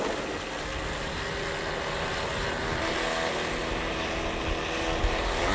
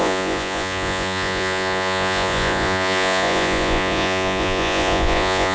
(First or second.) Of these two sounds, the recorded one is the first